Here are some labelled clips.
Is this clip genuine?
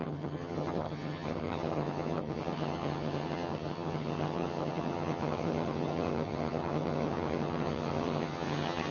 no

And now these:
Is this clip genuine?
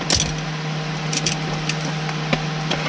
yes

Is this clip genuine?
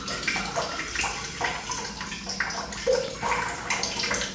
yes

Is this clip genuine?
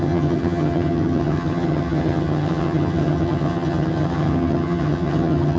no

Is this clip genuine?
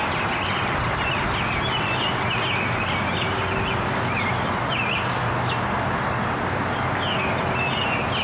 yes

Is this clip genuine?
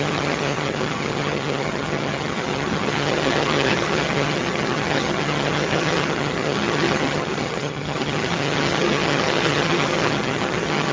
no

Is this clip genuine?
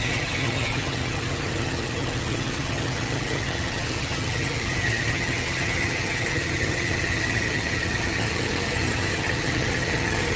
no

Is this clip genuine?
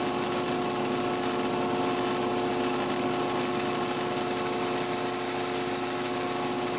yes